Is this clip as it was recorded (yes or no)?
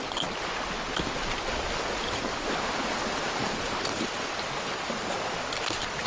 yes